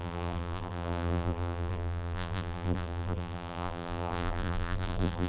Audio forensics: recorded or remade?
remade